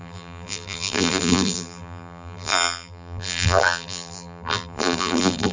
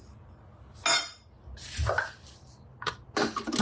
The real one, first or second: second